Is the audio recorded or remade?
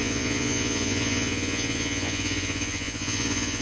remade